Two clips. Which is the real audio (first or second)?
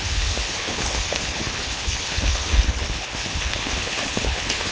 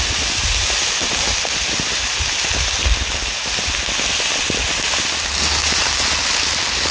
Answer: second